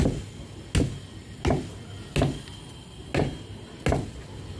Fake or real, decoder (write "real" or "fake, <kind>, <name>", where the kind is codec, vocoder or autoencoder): real